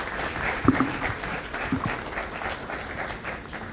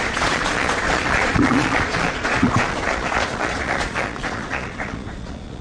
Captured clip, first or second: first